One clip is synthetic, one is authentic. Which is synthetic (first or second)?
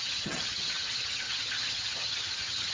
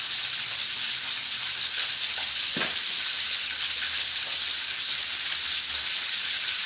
first